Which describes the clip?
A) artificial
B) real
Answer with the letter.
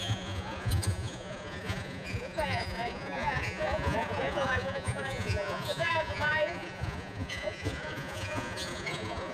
A